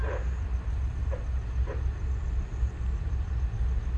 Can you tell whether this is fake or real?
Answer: real